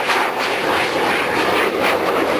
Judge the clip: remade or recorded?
recorded